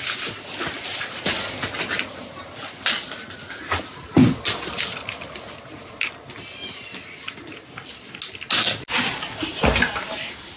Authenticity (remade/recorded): recorded